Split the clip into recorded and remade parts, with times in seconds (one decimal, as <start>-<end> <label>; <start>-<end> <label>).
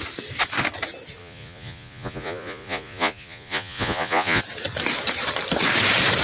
0.0-1.2 recorded; 1.2-4.4 remade; 4.4-6.2 recorded